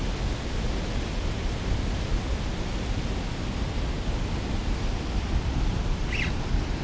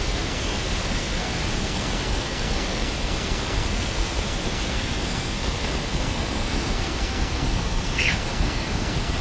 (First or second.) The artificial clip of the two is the second